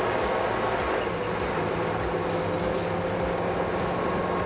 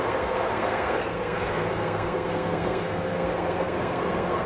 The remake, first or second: second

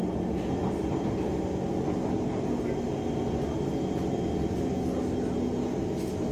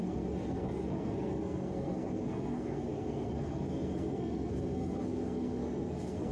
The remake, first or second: second